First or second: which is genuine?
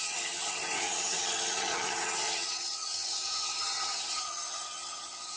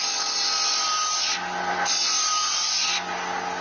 second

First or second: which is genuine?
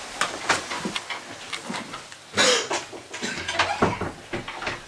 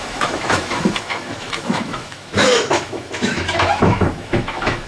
first